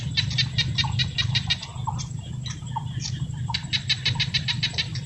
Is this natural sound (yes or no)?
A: yes